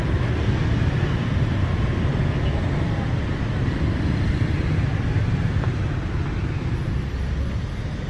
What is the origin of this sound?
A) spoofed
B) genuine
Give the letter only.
B